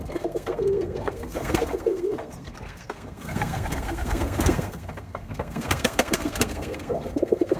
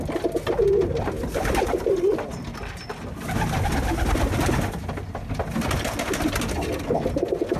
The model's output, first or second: first